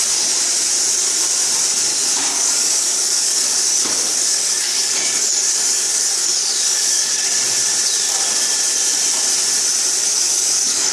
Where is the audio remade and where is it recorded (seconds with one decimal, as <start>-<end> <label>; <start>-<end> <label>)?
0.0-1.9 recorded; 1.9-7.1 remade; 7.1-10.0 recorded; 10.0-10.9 remade